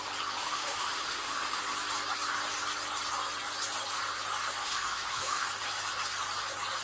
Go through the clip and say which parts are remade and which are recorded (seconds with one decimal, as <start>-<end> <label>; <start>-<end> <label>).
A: 0.0-0.4 recorded; 0.4-1.6 remade; 1.6-4.6 recorded; 4.6-5.5 remade; 5.5-6.8 recorded